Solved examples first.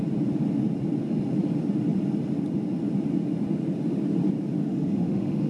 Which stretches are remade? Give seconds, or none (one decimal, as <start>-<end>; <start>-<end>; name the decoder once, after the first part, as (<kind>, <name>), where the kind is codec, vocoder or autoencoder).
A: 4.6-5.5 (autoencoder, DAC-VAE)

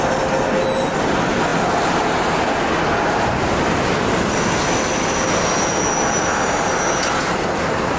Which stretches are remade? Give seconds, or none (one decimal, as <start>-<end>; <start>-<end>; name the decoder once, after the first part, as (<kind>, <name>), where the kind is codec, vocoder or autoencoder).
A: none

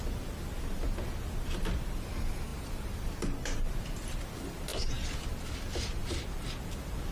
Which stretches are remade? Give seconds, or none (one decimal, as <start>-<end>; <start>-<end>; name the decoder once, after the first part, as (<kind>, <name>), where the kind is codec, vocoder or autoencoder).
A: none